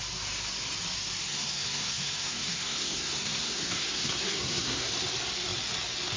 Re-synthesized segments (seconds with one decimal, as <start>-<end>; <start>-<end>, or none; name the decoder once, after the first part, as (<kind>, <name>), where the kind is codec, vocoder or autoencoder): 1.2-4.9 (codec, SNAC)